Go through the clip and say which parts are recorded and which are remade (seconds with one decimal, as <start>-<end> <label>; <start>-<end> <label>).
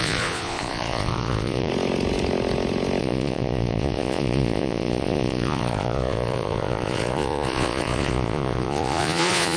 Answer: 0.0-1.7 remade; 1.7-3.0 recorded; 3.0-9.6 remade